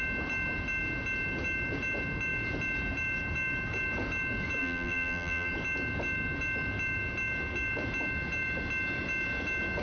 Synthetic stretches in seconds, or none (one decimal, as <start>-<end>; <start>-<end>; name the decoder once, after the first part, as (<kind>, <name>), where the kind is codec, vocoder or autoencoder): 4.6-5.5 (vocoder, BigVGAN v2)